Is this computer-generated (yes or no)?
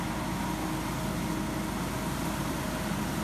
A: no